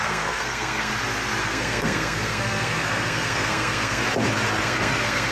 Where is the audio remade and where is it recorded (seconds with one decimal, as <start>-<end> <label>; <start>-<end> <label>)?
0.0-0.9 remade; 0.9-1.4 recorded; 1.4-4.0 remade; 4.0-4.6 recorded; 4.6-5.3 remade